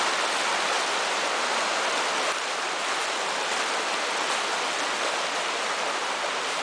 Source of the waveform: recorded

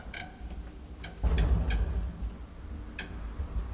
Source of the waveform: recorded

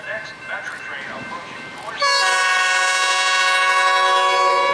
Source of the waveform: recorded